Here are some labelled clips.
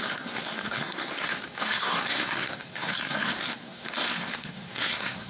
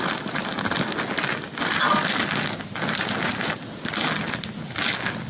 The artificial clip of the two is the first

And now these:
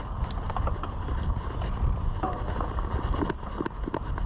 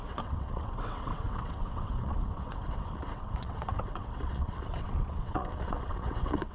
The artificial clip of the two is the second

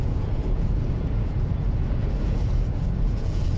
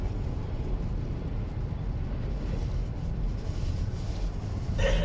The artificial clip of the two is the first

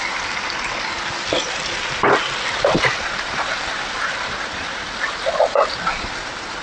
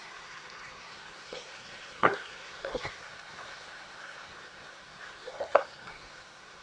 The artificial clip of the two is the second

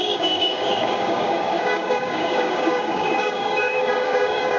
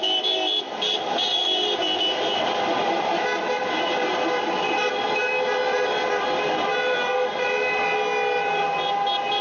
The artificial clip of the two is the first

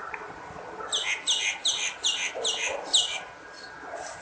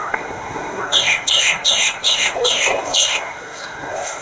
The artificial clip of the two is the second